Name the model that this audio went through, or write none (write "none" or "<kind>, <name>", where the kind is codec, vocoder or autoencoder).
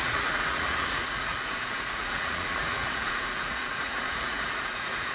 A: vocoder, Vocos